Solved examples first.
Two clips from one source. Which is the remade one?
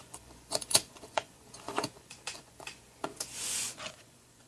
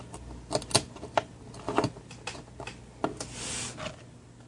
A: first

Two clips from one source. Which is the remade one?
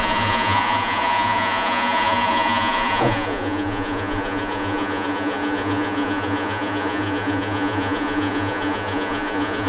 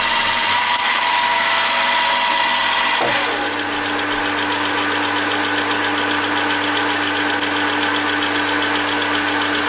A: first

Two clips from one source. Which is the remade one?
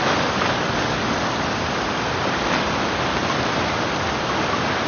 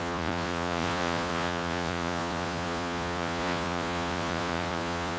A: second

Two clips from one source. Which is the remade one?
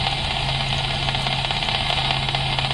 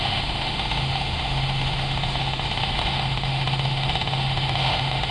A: second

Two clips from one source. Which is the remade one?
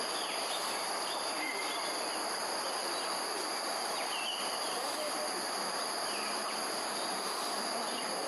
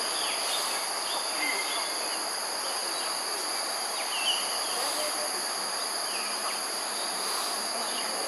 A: first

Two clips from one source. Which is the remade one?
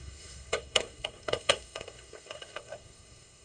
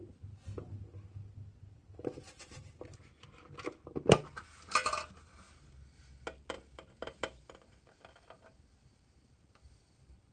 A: first